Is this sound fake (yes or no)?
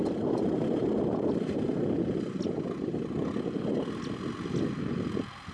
no